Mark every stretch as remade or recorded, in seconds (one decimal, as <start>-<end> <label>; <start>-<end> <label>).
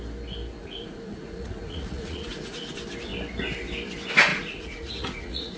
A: 0.0-0.6 recorded; 0.6-2.6 remade; 2.6-4.3 recorded; 4.3-5.6 remade